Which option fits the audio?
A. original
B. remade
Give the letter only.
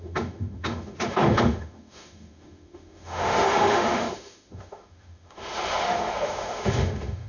B